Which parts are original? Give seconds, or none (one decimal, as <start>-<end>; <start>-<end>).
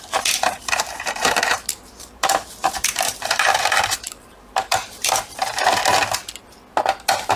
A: 5.8-7.4